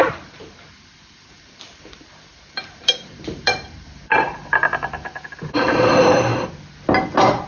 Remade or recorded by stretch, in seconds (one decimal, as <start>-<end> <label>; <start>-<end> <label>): 0.0-6.3 remade; 6.3-7.5 recorded